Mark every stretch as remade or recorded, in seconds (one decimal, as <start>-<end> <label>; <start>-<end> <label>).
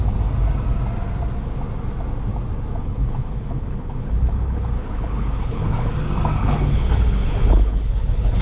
0.0-2.8 recorded; 2.8-5.9 remade; 5.9-6.4 recorded; 6.4-8.4 remade